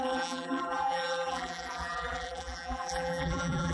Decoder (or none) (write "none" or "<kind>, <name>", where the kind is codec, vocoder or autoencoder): vocoder, BigVGAN v2